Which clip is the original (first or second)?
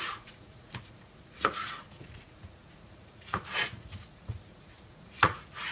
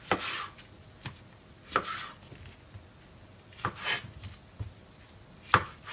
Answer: second